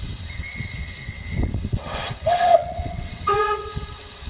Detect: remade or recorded remade